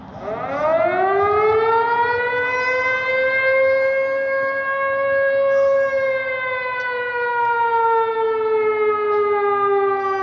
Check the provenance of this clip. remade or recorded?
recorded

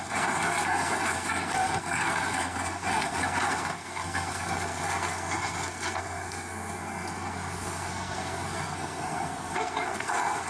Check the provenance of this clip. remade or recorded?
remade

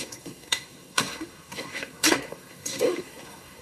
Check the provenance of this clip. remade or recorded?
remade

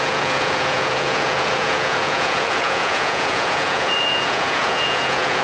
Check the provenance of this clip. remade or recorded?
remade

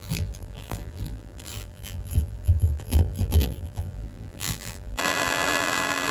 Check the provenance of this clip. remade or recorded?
remade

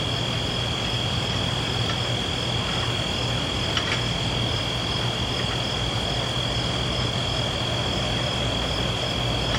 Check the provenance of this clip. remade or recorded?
recorded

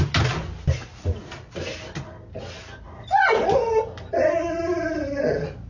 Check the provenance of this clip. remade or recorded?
recorded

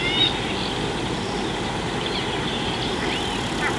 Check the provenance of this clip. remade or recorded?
recorded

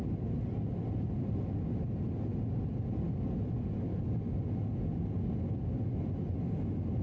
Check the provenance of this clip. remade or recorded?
recorded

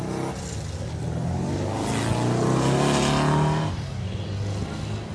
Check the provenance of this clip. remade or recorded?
recorded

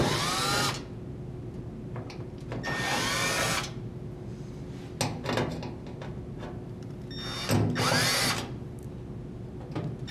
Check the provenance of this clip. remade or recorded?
recorded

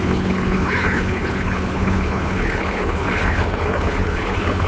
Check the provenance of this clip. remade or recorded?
remade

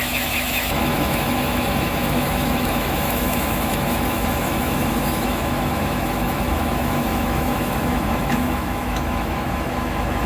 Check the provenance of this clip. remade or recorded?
remade